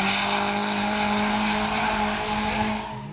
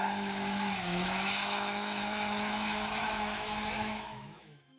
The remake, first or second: second